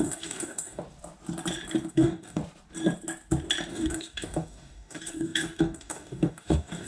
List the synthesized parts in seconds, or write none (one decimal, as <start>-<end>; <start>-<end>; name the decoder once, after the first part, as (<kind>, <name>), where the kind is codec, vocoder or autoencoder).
0.0-0.8 (codec, DAC); 1.9-2.4; 3.7-6.9